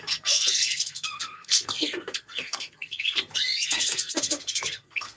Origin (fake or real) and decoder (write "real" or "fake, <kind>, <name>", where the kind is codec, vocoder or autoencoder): fake, codec, SNAC